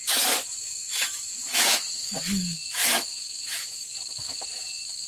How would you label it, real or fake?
fake